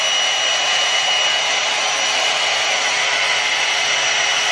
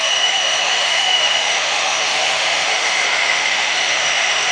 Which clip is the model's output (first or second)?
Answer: second